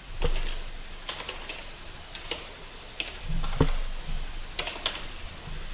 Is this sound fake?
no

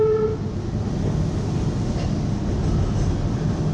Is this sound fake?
no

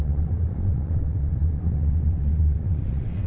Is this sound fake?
yes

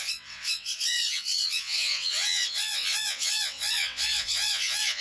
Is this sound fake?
yes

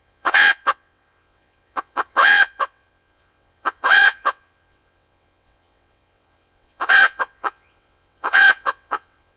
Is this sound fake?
yes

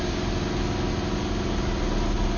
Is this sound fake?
no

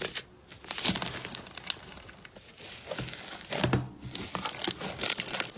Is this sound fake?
no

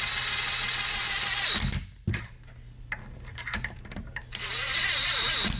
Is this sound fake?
no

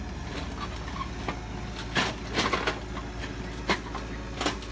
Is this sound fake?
no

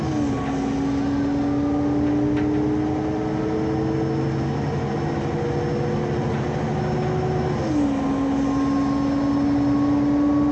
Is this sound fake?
no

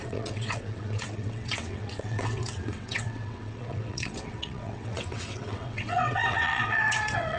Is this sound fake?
yes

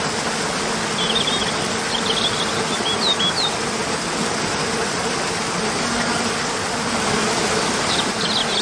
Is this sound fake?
no